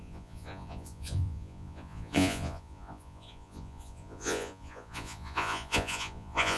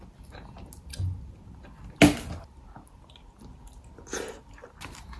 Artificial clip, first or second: first